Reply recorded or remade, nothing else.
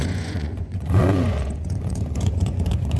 remade